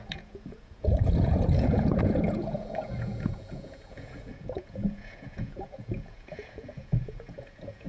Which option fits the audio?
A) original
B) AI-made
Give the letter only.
B